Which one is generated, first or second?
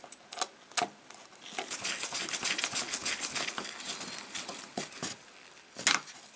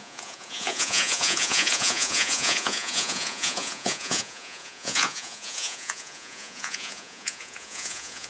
second